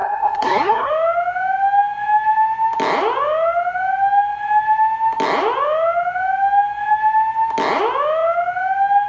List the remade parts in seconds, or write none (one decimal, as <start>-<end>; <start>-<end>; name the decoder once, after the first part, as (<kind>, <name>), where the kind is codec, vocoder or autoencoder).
0.0-0.9 (codec, SNAC)